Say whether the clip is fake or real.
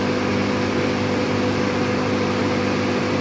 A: real